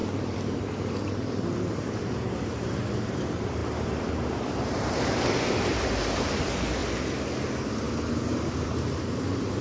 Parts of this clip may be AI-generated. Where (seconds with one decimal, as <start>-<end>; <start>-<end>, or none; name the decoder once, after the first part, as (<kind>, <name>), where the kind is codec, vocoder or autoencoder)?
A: 1.1-6.8 (vocoder, BigVGAN v2); 8.1-9.6